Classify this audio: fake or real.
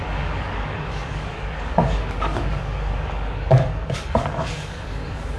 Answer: fake